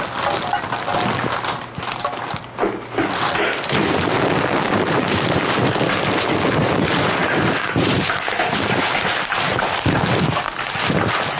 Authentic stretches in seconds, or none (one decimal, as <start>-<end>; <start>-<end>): 0.0-11.4